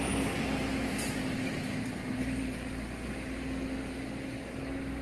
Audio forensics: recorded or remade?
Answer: recorded